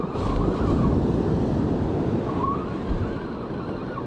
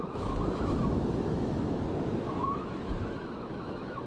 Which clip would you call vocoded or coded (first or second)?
second